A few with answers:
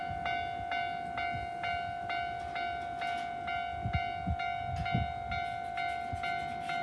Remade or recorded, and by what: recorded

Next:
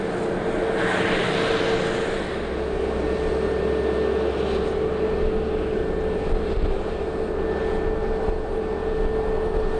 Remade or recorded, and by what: recorded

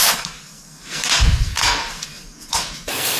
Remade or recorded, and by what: remade, codec, SNAC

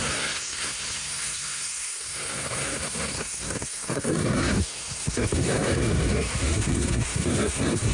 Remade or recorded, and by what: remade, codec, SNAC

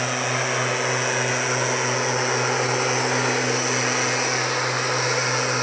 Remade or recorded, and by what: recorded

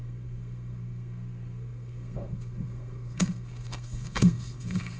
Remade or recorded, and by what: remade, codec, SNAC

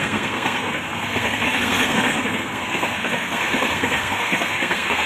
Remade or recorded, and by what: remade, codec, SNAC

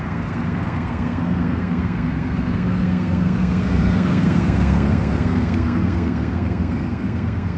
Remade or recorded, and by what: remade, codec, SNAC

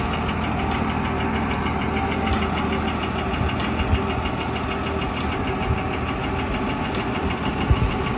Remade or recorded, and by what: recorded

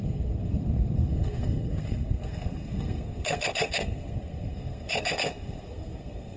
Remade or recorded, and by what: remade, codec, SNAC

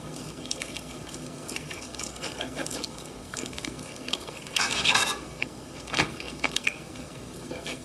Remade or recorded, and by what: remade, codec, SNAC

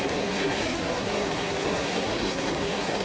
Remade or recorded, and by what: remade, codec, SNAC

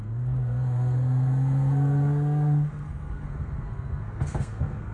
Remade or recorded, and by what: remade, codec, SNAC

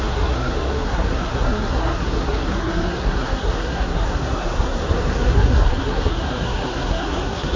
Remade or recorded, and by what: remade, codec, SNAC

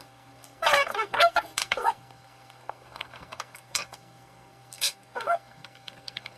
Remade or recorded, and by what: remade, codec, SNAC